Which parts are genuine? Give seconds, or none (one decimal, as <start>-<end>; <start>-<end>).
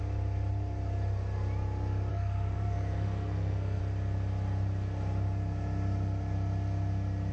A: 0.0-2.1; 3.8-7.3